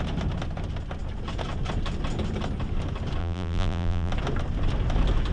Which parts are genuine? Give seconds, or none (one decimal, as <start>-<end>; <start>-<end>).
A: 0.0-3.2; 4.1-5.3